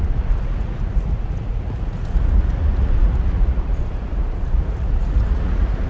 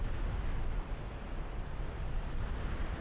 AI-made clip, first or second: first